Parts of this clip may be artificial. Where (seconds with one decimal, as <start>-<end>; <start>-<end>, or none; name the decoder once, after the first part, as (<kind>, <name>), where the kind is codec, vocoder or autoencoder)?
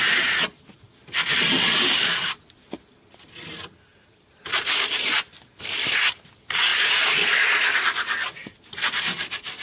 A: 3.9-5.1 (vocoder, BigVGAN v2); 6.7-7.3; 8.4-9.0